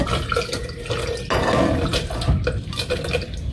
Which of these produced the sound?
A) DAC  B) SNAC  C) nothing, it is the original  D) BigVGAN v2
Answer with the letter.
C